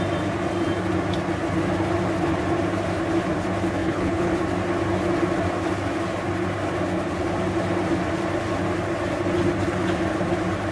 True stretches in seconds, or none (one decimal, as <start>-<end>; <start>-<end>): 0.0-3.8; 4.3-10.7